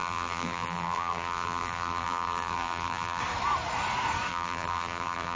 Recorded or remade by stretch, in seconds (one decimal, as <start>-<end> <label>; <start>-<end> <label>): 0.0-3.2 remade; 3.2-4.3 recorded; 4.3-5.4 remade